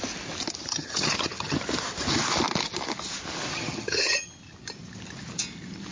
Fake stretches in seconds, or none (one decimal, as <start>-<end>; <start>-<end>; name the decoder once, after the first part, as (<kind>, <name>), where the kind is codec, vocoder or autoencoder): 0.7-1.6 (vocoder, HiFi-GAN); 3.5-4.3